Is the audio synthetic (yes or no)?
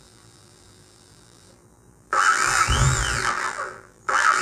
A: yes